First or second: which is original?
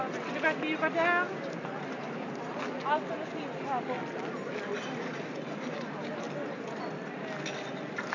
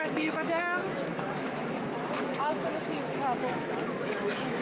first